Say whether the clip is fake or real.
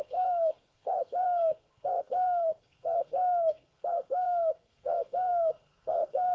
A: fake